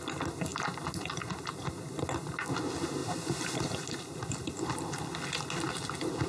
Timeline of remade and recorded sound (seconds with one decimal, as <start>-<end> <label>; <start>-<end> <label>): 0.0-3.0 recorded; 3.0-4.8 remade; 4.8-6.3 recorded